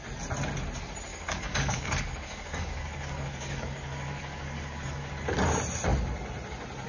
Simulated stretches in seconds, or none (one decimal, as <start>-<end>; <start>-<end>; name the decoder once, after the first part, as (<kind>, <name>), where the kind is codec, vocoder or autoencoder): 1.1-5.1 (codec, DAC)